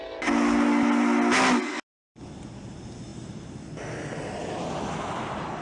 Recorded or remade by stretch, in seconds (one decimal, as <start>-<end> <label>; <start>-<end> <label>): 0.0-5.6 recorded